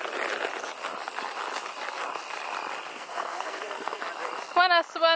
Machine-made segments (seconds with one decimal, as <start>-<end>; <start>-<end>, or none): 2.9-4.0